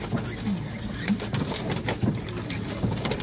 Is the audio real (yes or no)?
yes